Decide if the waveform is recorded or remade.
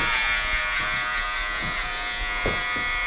remade